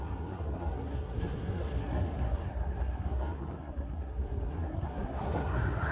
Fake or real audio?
fake